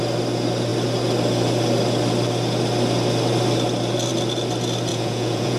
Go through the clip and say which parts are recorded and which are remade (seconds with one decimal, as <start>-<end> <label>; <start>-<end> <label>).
0.0-4.9 recorded; 4.9-5.6 remade